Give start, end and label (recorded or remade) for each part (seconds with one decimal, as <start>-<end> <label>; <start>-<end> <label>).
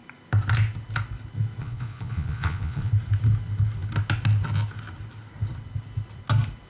0.0-1.6 recorded; 1.6-2.9 remade; 2.9-6.7 recorded